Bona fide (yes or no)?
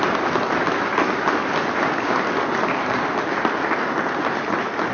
yes